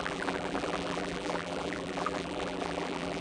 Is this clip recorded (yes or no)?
no